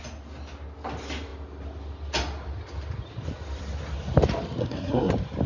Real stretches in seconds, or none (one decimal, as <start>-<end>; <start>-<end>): 0.0-4.6; 5.1-5.5